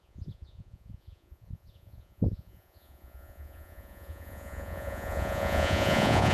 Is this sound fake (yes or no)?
yes